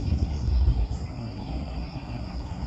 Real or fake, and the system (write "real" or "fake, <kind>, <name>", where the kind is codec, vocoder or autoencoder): fake, codec, SNAC